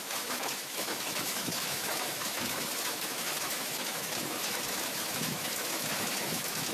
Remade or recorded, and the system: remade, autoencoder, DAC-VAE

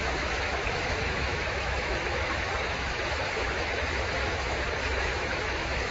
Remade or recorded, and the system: remade, autoencoder, DAC-VAE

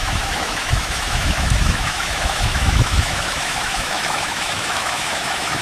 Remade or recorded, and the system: remade, autoencoder, DAC-VAE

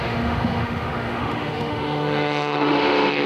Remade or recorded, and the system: remade, autoencoder, DAC-VAE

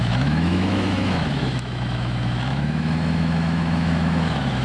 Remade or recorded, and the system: remade, autoencoder, DAC-VAE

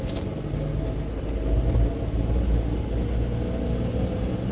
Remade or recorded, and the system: recorded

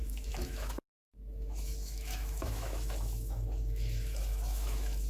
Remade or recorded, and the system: remade, autoencoder, DAC-VAE